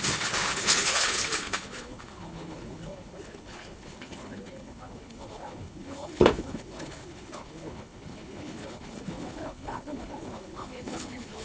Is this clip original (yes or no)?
no